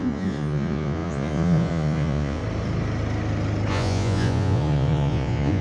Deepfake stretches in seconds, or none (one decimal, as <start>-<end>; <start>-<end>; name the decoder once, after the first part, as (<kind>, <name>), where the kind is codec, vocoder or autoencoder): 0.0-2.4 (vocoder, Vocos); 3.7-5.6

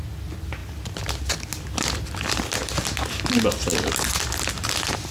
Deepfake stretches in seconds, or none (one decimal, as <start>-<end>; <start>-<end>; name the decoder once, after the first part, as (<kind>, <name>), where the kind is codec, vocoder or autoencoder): none

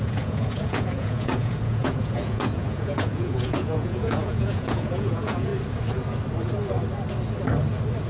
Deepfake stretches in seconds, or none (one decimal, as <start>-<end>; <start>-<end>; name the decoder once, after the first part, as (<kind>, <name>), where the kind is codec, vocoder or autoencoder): 0.0-5.5 (vocoder, Vocos)